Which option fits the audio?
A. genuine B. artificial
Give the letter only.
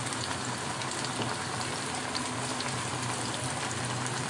A